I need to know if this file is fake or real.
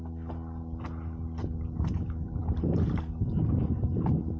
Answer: real